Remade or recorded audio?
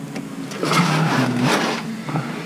recorded